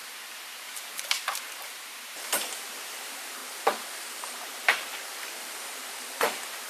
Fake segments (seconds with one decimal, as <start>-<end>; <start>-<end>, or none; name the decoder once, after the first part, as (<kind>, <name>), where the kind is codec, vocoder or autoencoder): 0.0-3.4 (vocoder, BigVGAN v2); 4.0-6.7